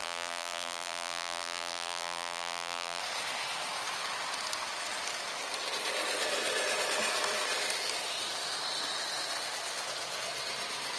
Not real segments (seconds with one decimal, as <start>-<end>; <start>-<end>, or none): 0.0-3.0